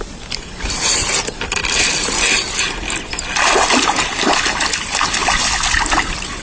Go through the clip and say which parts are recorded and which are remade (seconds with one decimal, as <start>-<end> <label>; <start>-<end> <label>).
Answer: 0.0-1.6 recorded; 1.6-2.2 remade; 2.2-6.4 recorded